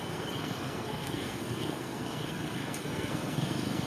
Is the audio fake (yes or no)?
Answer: yes